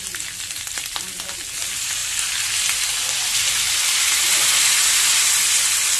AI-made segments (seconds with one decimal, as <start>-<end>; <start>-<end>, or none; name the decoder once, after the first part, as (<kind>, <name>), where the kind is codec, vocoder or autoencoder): none